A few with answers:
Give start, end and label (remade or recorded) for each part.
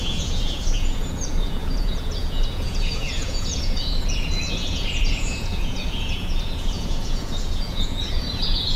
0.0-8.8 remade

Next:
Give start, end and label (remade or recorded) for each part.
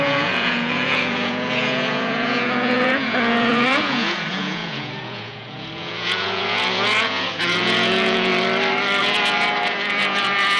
0.0-8.3 remade; 8.3-9.0 recorded; 9.0-10.6 remade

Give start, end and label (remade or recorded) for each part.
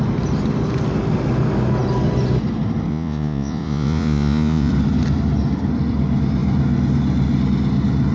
0.0-2.9 recorded; 2.9-4.7 remade; 4.7-8.1 recorded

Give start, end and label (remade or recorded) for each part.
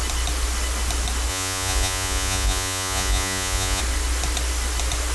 0.0-1.3 recorded; 1.3-3.8 remade; 3.8-5.1 recorded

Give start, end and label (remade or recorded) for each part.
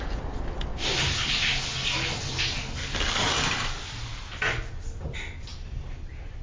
0.0-6.4 recorded